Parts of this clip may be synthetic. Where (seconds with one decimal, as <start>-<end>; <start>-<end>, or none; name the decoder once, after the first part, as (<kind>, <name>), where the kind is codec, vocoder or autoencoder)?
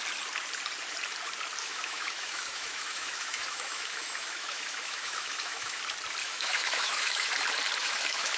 1.6-5.8 (autoencoder, DAC-VAE); 6.2-7.3; 7.8-8.4